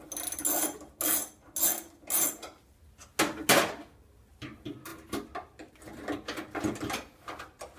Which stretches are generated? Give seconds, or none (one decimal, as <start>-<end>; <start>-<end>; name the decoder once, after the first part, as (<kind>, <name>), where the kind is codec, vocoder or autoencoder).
none